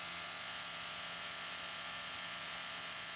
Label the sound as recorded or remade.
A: remade